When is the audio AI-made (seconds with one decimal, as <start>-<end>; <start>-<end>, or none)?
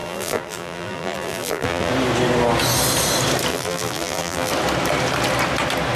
0.0-1.9; 3.5-4.5